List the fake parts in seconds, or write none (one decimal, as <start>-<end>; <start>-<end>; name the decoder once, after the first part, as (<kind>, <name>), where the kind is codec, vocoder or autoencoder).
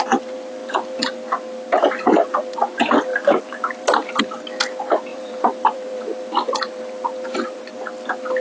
0.6-1.1 (vocoder, BigVGAN v2); 3.1-4.2; 5.1-7.6